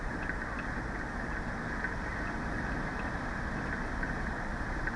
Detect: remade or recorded recorded